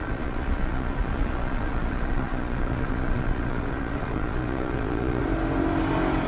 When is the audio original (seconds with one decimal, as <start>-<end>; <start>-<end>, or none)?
5.2-6.3